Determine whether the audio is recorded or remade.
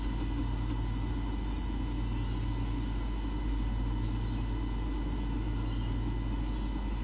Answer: recorded